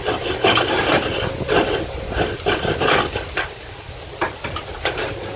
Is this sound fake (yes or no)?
yes